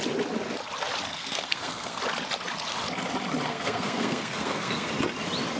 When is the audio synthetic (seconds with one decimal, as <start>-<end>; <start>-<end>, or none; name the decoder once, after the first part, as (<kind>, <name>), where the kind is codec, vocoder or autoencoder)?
1.1-2.0 (codec, SNAC); 3.5-4.9